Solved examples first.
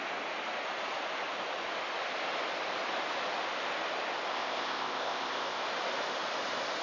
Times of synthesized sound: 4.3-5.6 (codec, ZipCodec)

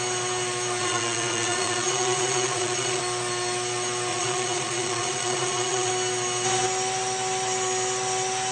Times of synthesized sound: 0.8-3.0 (vocoder, Vocos); 4.1-5.9

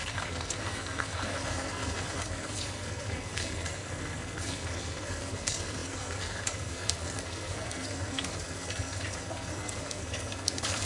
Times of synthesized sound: 0.0-10.9 (codec, SNAC)

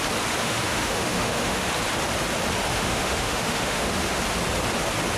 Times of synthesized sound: 0.4-1.7 (autoencoder, DAC-VAE); 2.7-4.2

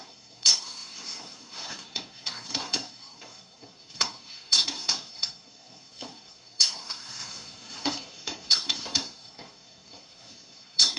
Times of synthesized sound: 0.0-11.0 (codec, SNAC)